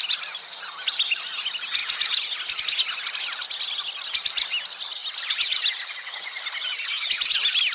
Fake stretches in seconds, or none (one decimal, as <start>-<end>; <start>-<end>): none